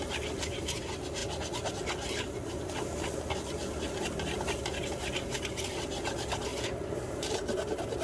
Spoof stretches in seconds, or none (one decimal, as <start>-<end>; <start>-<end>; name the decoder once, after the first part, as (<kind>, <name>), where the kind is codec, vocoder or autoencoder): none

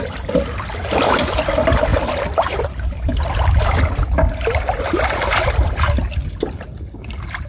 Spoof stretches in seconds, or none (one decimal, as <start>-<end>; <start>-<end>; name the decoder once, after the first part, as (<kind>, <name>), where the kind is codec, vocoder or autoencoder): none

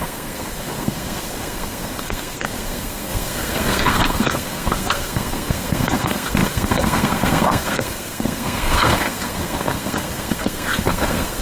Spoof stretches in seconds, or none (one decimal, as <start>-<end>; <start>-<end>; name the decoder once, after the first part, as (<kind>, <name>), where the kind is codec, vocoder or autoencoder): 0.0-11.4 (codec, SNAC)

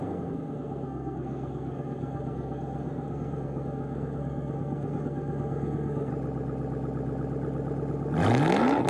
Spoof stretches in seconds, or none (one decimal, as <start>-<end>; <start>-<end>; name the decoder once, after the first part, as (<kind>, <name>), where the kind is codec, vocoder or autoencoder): 0.0-6.1 (codec, SNAC)